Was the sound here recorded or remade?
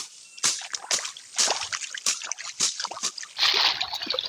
recorded